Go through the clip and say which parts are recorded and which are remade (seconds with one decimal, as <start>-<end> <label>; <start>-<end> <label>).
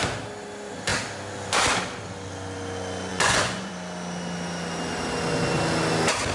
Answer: 0.0-3.1 recorded; 3.1-3.7 remade; 3.7-6.3 recorded